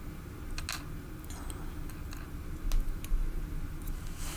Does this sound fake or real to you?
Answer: real